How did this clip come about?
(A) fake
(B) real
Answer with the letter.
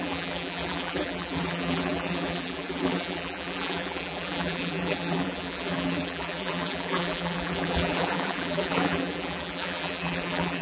A